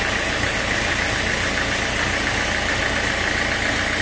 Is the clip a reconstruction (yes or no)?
no